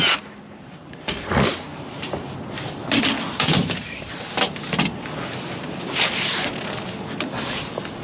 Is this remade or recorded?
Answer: recorded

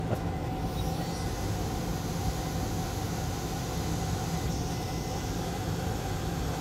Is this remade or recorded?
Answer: recorded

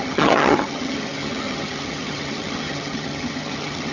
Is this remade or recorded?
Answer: remade